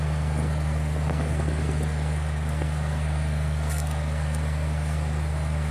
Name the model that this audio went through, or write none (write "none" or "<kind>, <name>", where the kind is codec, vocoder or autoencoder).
codec, SNAC